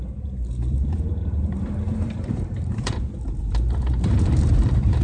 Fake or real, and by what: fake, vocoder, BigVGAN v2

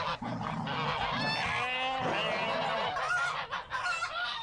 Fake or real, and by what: real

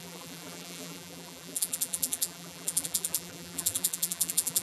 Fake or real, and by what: fake, vocoder, BigVGAN v2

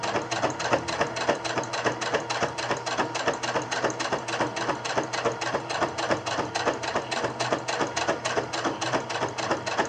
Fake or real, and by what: real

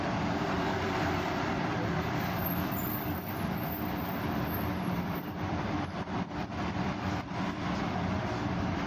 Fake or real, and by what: fake, vocoder, BigVGAN v2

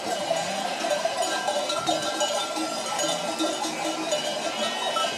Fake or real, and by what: real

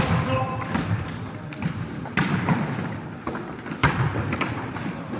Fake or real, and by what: fake, vocoder, BigVGAN v2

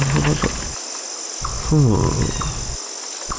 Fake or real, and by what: real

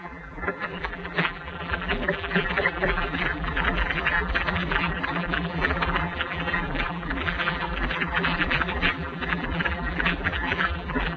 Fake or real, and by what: fake, vocoder, BigVGAN v2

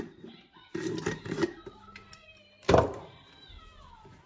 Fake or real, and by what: fake, vocoder, BigVGAN v2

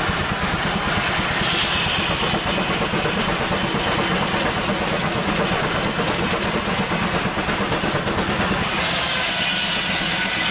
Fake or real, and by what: real